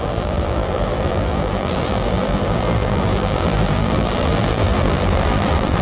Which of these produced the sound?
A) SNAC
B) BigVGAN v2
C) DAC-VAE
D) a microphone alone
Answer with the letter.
B